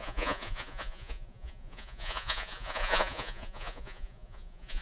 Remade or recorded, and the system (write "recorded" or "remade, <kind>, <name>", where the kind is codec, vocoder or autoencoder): remade, vocoder, Vocos